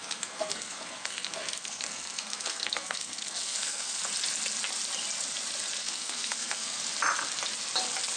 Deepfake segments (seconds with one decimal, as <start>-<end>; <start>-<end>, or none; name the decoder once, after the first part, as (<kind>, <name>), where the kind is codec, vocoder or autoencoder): 0.0-4.0 (codec, SNAC); 5.8-6.8